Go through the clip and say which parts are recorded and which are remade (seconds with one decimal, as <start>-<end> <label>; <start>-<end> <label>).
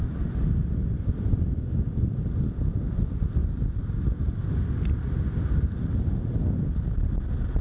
0.0-3.4 recorded; 3.4-4.0 remade; 4.0-7.6 recorded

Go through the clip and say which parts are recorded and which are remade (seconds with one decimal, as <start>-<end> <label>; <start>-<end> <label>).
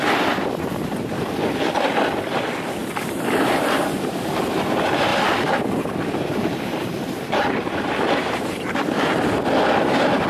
0.0-2.8 recorded; 2.8-4.4 remade; 4.4-5.1 recorded; 5.1-8.8 remade; 8.8-10.3 recorded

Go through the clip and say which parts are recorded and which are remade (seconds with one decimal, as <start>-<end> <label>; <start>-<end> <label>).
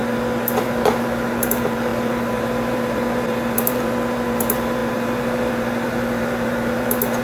0.0-0.6 recorded; 0.6-7.2 remade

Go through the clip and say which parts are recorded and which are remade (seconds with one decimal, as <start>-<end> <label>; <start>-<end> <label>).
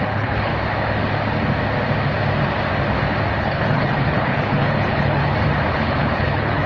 0.0-0.5 remade; 0.5-3.4 recorded; 3.4-5.2 remade; 5.2-5.7 recorded; 5.7-6.7 remade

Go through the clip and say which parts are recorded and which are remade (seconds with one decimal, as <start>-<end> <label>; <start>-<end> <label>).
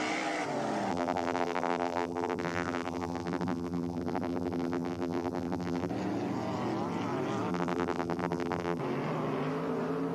0.0-0.9 recorded; 0.9-5.9 remade; 5.9-7.5 recorded; 7.5-8.8 remade; 8.8-10.1 recorded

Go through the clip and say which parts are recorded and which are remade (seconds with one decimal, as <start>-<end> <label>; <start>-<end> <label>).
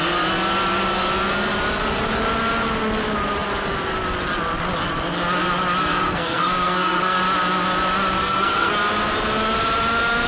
0.0-5.9 recorded; 5.9-7.2 remade; 7.2-8.2 recorded; 8.2-8.7 remade; 8.7-10.3 recorded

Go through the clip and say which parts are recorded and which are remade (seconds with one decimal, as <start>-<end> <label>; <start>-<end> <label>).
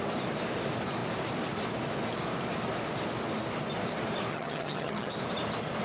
0.0-4.3 recorded; 4.3-5.1 remade; 5.1-5.8 recorded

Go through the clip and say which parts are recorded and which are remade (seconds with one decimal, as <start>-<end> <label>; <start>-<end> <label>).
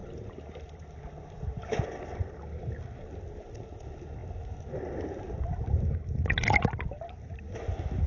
0.0-1.6 remade; 1.6-4.2 recorded; 4.2-5.6 remade; 5.6-8.1 recorded